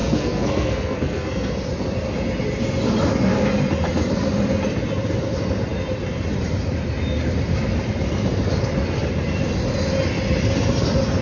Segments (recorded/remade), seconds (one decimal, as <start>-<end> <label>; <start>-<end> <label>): 0.0-1.5 remade; 1.5-11.2 recorded